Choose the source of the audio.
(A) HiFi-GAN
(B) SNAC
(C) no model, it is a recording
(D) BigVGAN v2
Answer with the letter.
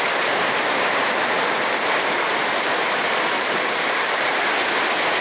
D